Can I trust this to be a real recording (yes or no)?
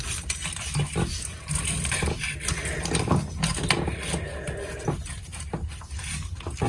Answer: yes